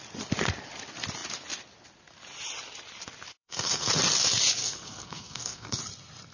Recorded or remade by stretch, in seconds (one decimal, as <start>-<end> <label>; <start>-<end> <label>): 0.0-3.3 recorded; 3.3-3.9 remade; 3.9-4.6 recorded; 4.6-5.8 remade; 5.8-6.3 recorded